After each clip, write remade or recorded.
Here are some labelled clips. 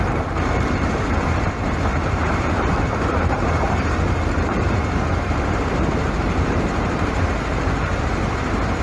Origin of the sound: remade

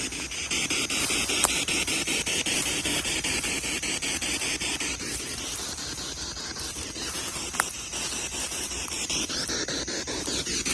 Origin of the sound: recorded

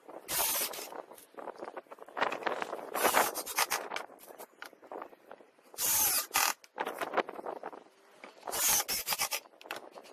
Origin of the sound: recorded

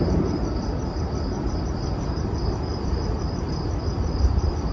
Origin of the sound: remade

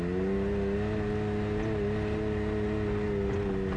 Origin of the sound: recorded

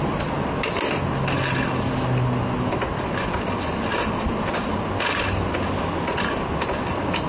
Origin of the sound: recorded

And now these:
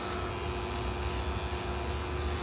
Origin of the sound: recorded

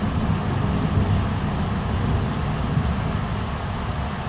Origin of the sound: recorded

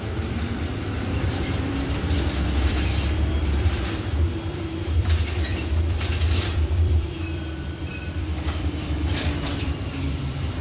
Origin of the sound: remade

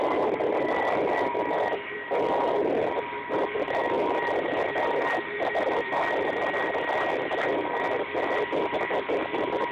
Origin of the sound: remade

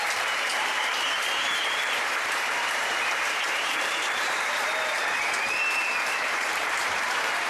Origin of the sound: remade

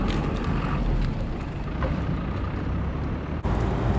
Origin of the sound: recorded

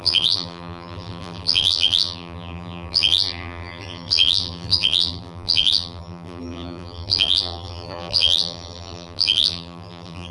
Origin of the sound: remade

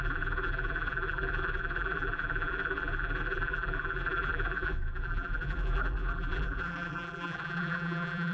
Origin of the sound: remade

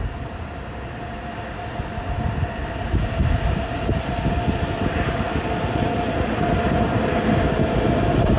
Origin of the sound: recorded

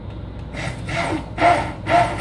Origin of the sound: recorded